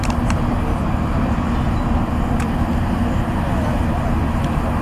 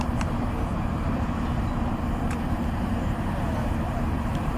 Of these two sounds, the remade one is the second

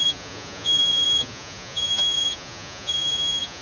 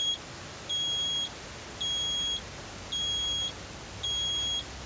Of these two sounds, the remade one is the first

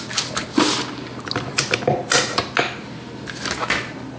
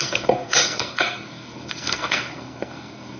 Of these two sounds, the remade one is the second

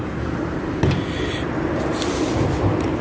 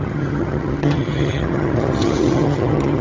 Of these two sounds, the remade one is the second